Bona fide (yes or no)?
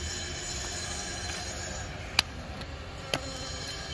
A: yes